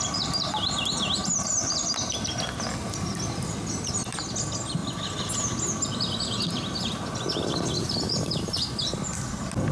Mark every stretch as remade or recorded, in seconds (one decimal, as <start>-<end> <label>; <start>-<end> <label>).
0.0-9.7 recorded